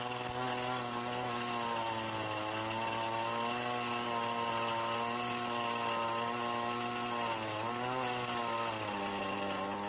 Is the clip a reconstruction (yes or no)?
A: no